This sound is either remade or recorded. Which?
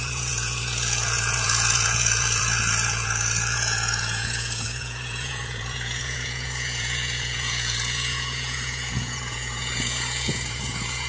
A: remade